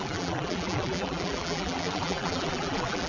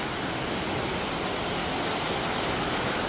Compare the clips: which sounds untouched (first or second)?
second